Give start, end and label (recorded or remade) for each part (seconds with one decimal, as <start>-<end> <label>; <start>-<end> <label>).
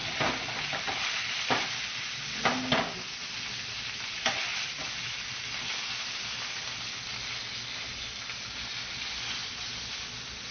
0.0-10.5 recorded